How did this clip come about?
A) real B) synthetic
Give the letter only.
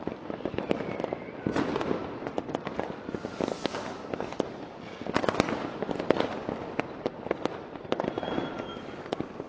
A